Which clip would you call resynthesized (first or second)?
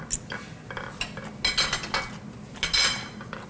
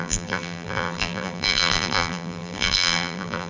second